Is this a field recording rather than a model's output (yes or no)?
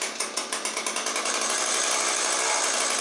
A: yes